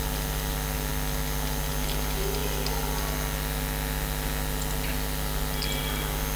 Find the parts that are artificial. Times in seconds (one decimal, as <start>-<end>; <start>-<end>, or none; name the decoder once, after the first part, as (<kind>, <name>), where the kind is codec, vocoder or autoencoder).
none